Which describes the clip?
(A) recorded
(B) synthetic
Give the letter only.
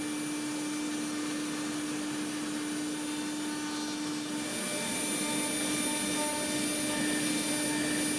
A